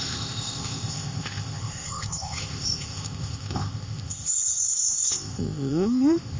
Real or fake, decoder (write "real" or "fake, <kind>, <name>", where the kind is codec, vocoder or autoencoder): fake, codec, ZipCodec